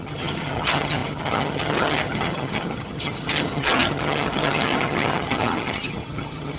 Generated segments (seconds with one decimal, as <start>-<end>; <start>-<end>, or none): 0.0-6.6

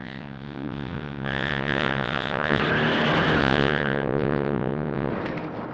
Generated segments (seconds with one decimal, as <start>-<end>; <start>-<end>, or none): 0.0-2.6; 3.4-5.1

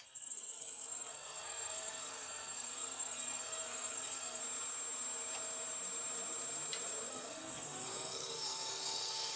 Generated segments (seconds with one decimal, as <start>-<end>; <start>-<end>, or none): 0.0-4.4; 7.1-9.4

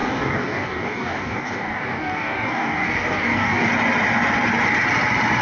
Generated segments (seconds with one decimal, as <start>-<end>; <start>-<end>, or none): 0.0-3.7

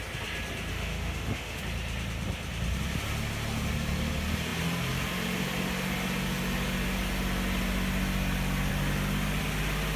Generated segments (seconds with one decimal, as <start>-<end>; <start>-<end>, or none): 0.7-1.6